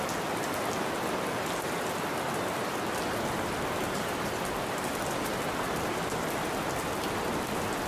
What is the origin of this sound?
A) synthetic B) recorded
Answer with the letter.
B